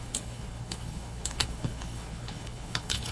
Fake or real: fake